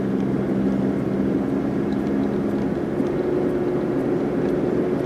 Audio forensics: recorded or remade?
recorded